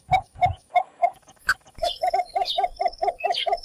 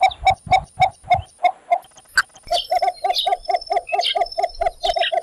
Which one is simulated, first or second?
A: first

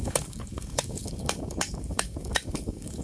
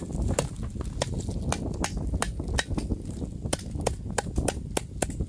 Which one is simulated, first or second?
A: first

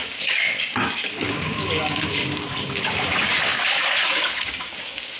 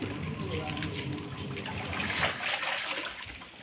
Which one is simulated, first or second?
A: first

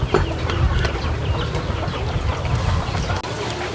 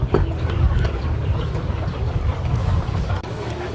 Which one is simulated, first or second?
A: second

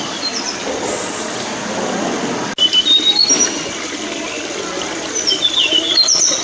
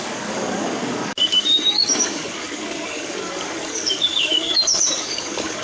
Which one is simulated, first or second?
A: second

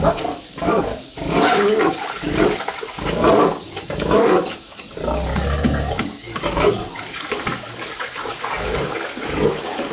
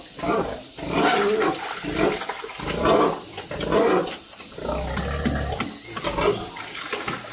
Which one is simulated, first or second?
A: first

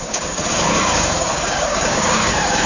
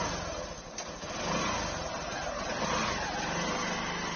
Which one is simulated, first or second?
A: first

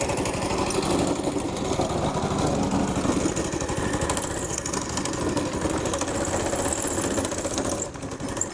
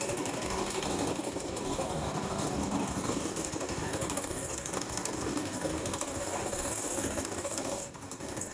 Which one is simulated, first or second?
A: second